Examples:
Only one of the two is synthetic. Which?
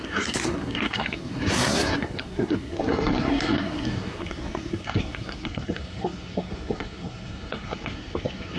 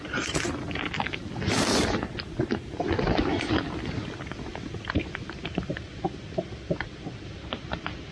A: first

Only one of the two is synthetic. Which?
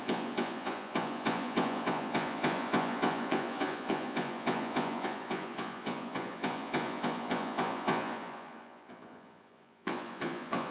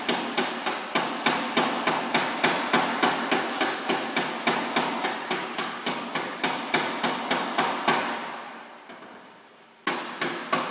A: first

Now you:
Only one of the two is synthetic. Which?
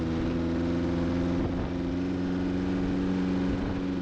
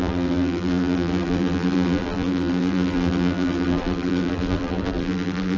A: second